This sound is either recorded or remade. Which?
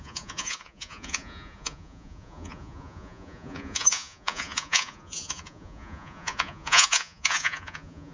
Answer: remade